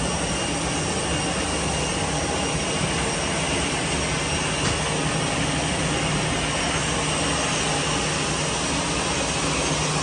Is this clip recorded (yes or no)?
yes